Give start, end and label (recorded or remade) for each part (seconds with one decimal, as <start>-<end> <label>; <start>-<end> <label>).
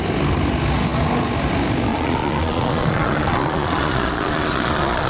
0.0-1.9 recorded; 1.9-5.1 remade